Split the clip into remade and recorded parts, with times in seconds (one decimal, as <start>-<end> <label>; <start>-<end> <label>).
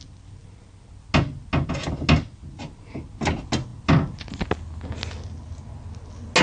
0.0-6.4 recorded